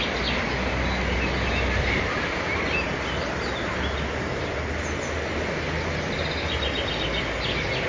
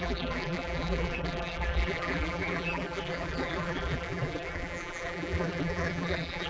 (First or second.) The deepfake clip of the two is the second